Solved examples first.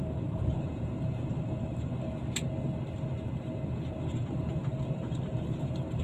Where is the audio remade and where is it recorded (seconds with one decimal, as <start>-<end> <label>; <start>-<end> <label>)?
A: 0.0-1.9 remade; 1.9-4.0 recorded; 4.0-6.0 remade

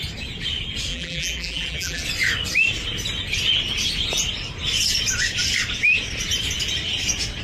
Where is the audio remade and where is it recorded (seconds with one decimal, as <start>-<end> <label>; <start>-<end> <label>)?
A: 0.0-0.9 recorded; 0.9-2.0 remade; 2.0-7.4 recorded

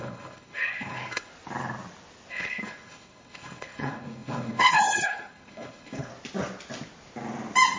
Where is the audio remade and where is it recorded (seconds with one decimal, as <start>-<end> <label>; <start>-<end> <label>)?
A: 0.0-1.3 remade; 1.3-2.3 recorded; 2.3-6.1 remade; 6.1-7.8 recorded